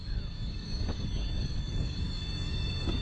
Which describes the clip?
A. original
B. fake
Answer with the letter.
B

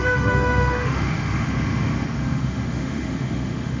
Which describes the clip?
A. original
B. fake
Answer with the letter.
B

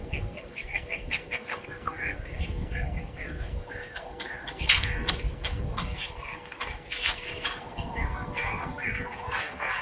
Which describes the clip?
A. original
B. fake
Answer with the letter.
B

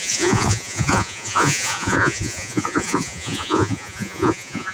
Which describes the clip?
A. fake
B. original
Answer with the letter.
A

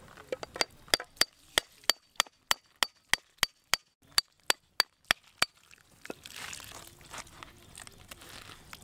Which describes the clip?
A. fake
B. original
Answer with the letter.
B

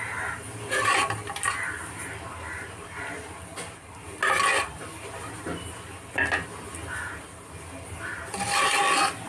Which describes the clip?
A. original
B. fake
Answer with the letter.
A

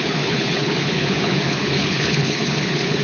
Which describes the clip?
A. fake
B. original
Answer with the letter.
A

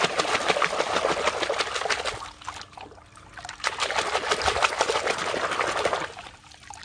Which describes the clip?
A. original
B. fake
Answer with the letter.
A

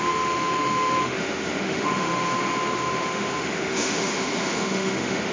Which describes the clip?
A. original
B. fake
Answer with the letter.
B